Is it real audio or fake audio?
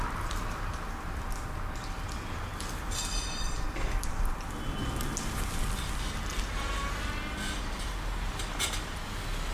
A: real